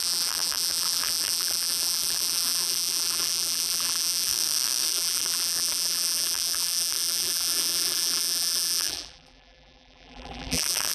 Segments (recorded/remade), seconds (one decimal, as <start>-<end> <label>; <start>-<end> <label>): 0.0-4.3 remade; 4.3-4.9 recorded; 4.9-10.9 remade